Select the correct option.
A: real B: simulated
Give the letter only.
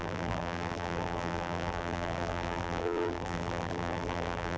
B